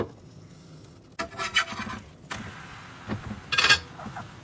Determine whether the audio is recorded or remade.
recorded